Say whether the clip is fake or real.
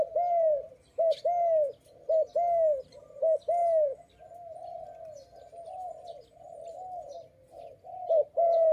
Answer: real